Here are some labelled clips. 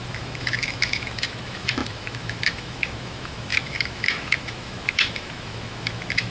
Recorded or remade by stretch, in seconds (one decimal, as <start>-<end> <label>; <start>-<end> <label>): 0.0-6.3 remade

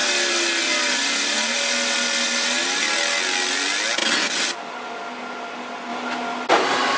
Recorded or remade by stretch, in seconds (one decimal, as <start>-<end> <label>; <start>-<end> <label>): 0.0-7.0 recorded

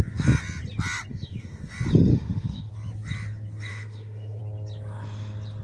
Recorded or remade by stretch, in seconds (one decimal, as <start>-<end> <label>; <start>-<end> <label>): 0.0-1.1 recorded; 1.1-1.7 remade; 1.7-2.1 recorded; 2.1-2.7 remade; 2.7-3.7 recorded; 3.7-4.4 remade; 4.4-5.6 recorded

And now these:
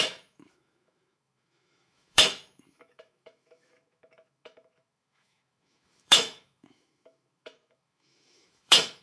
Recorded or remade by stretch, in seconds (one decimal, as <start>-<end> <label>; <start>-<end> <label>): 0.0-9.0 remade

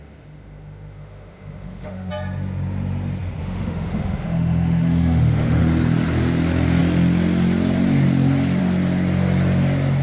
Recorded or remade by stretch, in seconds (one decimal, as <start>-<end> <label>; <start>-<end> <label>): 0.0-2.1 remade; 2.1-3.4 recorded; 3.4-5.6 remade; 5.6-10.0 recorded

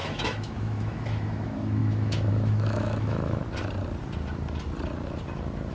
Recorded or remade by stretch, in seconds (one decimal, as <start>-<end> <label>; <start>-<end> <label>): 0.0-3.4 remade; 3.4-5.7 recorded

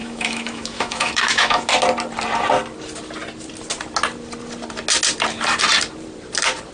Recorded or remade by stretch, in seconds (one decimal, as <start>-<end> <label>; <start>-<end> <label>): 0.0-1.7 remade; 1.7-6.7 recorded

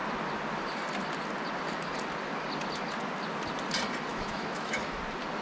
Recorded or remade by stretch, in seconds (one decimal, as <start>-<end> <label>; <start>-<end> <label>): 0.0-4.1 recorded; 4.1-5.0 remade; 5.0-5.4 recorded